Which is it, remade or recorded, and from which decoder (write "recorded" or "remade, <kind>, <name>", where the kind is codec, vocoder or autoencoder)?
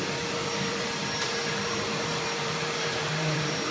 remade, vocoder, BigVGAN v2